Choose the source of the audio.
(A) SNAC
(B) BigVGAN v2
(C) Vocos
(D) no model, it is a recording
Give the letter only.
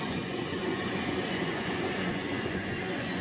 C